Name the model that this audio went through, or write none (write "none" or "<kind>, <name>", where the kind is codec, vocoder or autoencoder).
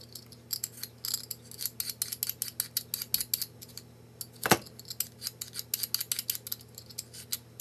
none